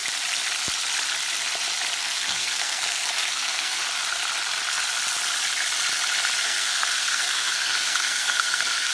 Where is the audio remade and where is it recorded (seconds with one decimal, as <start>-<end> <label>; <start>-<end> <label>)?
0.0-2.0 recorded; 2.0-3.8 remade; 3.8-6.4 recorded; 6.4-8.9 remade

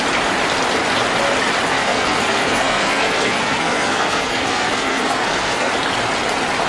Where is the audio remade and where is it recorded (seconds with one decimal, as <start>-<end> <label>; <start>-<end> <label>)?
0.0-1.7 recorded; 1.7-5.7 remade; 5.7-6.7 recorded

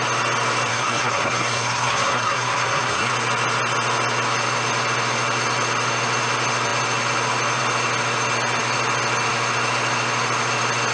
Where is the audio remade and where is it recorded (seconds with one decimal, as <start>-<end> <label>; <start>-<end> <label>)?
0.0-0.7 recorded; 0.7-3.1 remade; 3.1-10.9 recorded

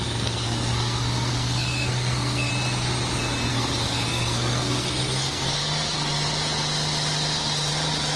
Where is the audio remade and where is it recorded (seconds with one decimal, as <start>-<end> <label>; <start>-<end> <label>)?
0.0-2.5 remade; 2.5-3.5 recorded; 3.5-5.6 remade; 5.6-8.2 recorded

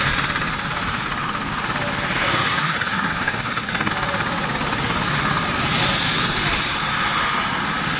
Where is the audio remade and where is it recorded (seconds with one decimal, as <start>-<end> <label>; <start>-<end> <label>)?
0.0-2.3 recorded; 2.3-3.9 remade; 3.9-8.0 recorded

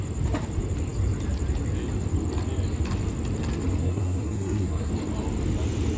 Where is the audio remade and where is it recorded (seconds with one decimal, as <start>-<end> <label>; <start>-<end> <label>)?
0.0-3.8 recorded; 3.8-4.9 remade; 4.9-6.0 recorded

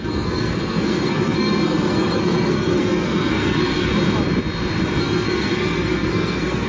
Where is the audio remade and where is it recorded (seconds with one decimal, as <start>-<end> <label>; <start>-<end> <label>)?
0.0-3.9 remade; 3.9-5.0 recorded; 5.0-6.7 remade